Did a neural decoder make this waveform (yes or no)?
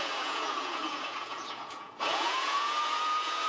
yes